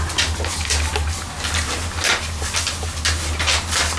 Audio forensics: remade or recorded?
recorded